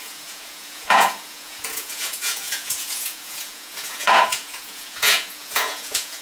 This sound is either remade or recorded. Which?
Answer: remade